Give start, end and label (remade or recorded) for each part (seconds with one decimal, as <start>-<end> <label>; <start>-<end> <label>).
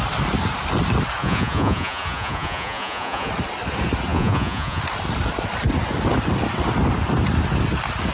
0.0-1.2 recorded; 1.2-3.3 remade; 3.3-4.1 recorded; 4.1-4.8 remade; 4.8-8.1 recorded